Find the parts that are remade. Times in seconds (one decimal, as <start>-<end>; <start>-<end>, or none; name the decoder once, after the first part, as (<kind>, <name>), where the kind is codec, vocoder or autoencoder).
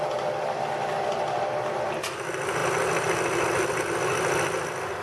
none